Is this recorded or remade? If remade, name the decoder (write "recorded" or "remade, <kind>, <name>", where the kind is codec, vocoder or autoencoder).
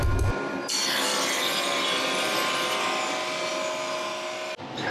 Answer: recorded